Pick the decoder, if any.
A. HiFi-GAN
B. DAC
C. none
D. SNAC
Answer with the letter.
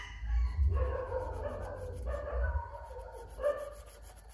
C